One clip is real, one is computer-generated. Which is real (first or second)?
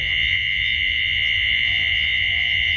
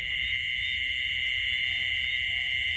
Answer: second